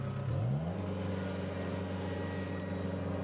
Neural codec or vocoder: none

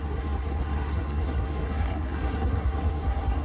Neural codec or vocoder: codec, SNAC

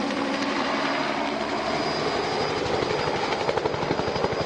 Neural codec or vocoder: none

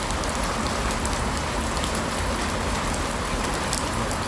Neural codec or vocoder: none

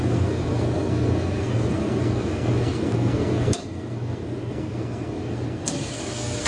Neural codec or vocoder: codec, SNAC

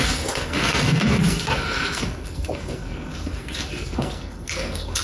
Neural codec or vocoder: codec, SNAC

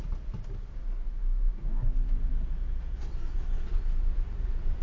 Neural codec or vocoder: none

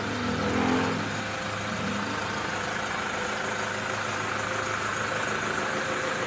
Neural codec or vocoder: none